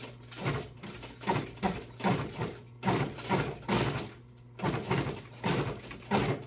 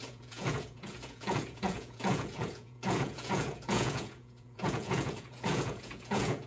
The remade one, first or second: second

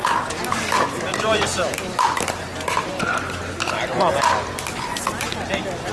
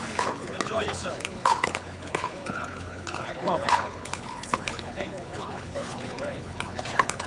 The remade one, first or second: second